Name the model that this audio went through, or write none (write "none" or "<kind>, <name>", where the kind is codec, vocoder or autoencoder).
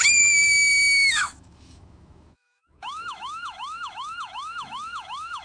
autoencoder, DAC-VAE